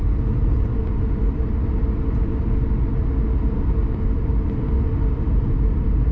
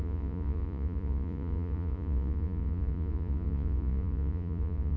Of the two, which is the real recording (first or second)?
first